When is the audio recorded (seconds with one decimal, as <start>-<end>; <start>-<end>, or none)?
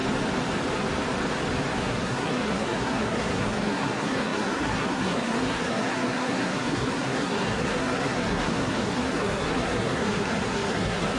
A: 0.0-1.8